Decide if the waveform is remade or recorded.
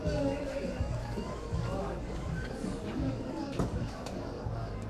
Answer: remade